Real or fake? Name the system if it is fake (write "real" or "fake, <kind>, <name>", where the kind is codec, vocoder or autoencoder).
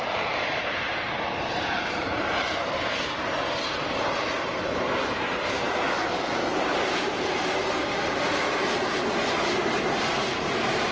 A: fake, vocoder, BigVGAN v2